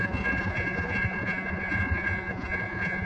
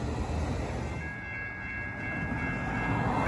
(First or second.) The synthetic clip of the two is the first